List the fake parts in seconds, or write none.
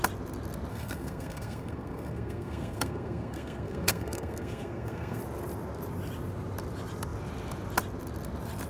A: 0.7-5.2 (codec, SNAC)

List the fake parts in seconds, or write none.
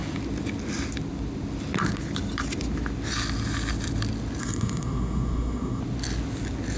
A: 4.4-5.8 (codec, SNAC)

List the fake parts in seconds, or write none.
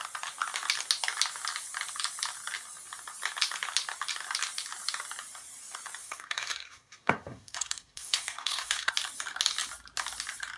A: 6.0-8.9 (codec, SNAC)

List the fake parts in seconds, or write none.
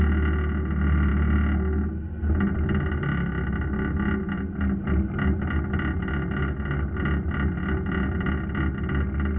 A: none